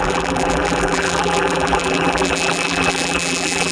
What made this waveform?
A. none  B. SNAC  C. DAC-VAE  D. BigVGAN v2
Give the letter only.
D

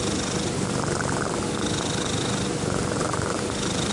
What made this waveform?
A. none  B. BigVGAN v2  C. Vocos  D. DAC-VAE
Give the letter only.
A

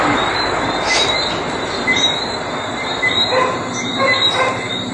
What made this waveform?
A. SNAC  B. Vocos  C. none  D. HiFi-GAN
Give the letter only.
C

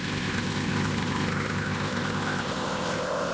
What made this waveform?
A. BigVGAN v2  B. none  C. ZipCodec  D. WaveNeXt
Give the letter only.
C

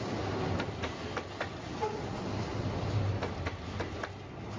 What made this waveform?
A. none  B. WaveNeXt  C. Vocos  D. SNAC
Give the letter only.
A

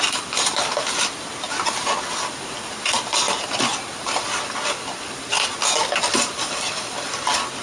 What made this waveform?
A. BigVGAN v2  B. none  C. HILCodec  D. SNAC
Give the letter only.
B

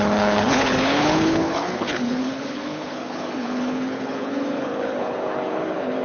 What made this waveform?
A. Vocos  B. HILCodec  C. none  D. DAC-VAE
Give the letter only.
B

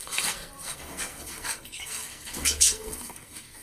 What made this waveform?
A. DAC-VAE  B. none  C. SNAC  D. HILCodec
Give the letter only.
C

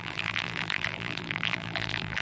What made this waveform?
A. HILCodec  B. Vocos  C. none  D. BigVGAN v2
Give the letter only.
D